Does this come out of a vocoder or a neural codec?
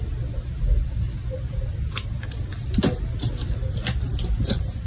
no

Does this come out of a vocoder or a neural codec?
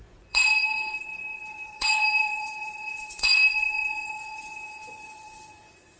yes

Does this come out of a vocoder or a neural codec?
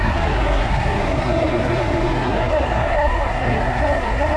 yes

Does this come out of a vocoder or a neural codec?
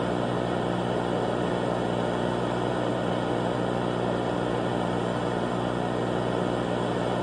no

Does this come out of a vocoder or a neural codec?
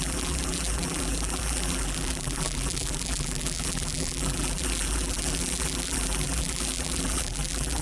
yes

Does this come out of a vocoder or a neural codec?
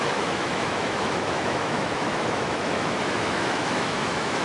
yes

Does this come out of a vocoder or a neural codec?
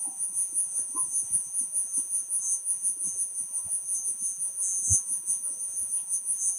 yes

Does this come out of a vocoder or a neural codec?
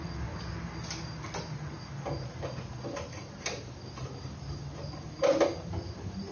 no